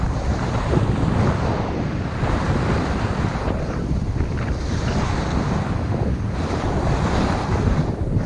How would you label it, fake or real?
fake